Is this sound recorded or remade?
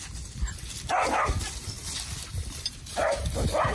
recorded